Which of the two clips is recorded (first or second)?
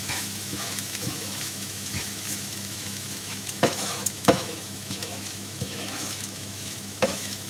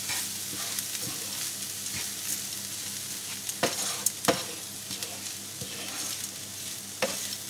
second